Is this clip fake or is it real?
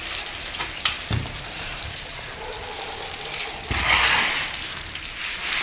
fake